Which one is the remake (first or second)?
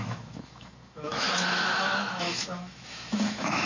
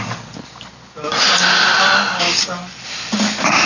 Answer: first